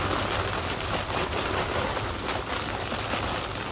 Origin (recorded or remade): remade